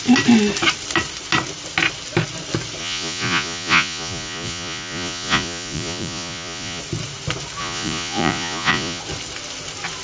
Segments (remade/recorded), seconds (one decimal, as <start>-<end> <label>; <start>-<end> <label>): 0.0-2.8 recorded; 2.8-6.8 remade; 6.8-7.6 recorded; 7.6-9.0 remade; 9.0-10.0 recorded